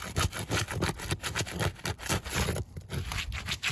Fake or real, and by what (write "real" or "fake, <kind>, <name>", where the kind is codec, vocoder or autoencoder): real